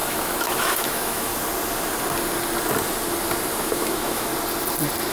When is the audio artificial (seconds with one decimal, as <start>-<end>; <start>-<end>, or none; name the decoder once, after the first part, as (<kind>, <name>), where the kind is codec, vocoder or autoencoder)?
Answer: 0.0-1.3 (autoencoder, DAC-VAE); 3.6-4.3